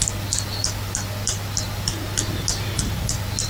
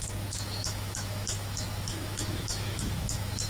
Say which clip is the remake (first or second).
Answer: second